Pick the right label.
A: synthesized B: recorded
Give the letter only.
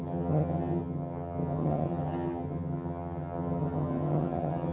A